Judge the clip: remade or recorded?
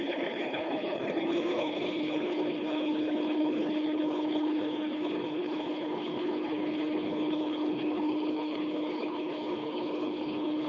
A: remade